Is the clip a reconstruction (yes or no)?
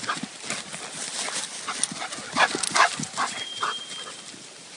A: no